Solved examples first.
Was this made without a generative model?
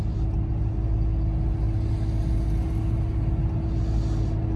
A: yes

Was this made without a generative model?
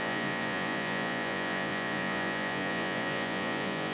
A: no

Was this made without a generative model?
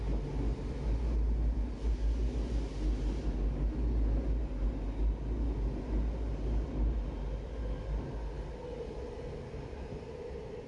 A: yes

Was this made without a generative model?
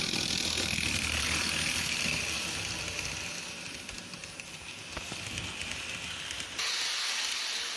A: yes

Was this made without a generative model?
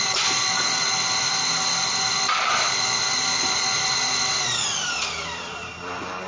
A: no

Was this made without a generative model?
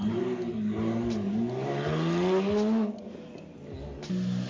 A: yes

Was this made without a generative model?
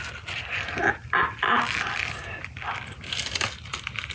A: yes